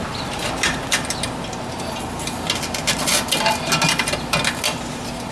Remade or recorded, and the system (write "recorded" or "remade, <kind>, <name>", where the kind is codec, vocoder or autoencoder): recorded